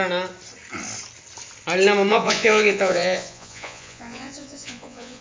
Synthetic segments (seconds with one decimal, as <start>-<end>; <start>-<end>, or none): 2.1-5.2